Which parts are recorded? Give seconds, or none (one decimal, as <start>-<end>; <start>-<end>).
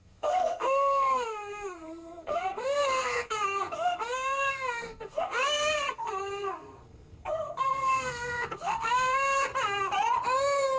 9.5-10.8